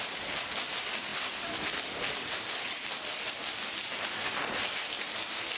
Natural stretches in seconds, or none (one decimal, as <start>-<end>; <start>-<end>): 0.0-5.6